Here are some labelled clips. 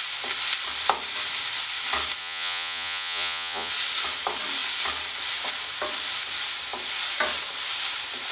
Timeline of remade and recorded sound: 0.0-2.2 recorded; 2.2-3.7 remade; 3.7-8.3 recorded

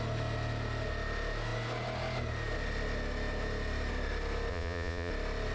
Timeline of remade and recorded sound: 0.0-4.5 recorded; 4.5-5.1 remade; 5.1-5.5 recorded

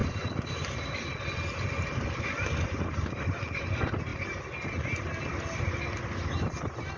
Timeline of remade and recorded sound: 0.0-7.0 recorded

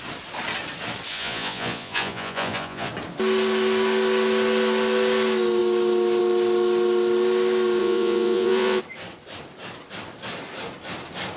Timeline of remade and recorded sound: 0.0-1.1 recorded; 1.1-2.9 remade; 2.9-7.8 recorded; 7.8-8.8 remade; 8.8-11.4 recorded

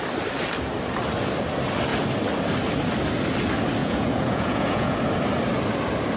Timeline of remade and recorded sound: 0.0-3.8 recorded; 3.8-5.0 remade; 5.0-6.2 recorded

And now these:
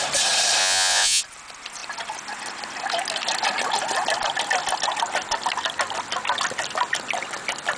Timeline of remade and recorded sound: 0.0-0.6 recorded; 0.6-1.2 remade; 1.2-7.8 recorded

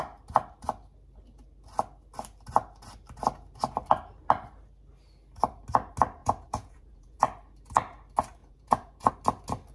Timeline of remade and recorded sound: 0.0-6.2 recorded; 6.2-7.2 remade; 7.2-8.4 recorded; 8.4-9.1 remade; 9.1-9.7 recorded